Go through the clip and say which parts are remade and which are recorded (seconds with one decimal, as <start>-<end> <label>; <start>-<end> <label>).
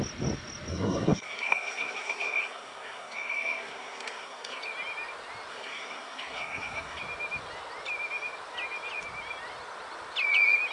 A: 0.0-0.7 recorded; 0.7-4.6 remade; 4.6-5.5 recorded; 5.5-7.0 remade; 7.0-10.7 recorded